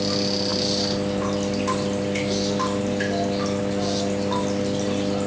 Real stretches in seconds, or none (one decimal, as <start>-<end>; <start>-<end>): 0.0-5.3